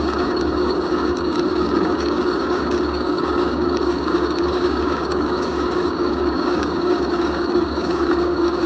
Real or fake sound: fake